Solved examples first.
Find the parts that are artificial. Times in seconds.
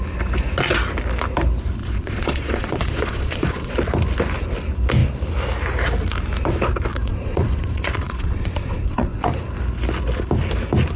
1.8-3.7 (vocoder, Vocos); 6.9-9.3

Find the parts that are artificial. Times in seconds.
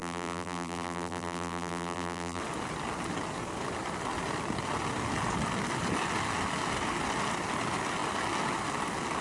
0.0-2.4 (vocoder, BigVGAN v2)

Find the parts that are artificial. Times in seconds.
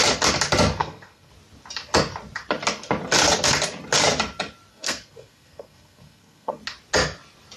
0.8-1.3 (codec, SNAC); 4.7-6.6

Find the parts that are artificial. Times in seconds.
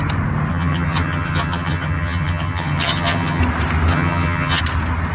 0.5-3.4 (vocoder, HiFi-GAN); 3.9-4.6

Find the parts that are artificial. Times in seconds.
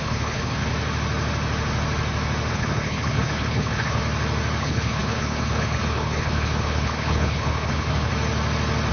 0.0-0.7 (codec, HILCodec); 2.5-4.0; 4.6-8.1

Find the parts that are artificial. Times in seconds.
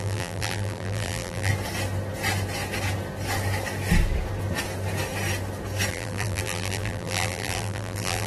0.0-1.5 (vocoder, BigVGAN v2); 5.9-8.3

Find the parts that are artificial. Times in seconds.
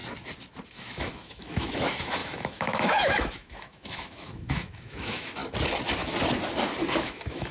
0.7-5.4 (autoencoder, DAC-VAE); 7.0-7.5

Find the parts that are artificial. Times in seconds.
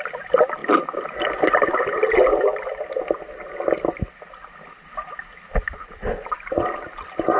none